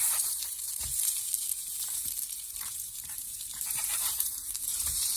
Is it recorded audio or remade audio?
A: remade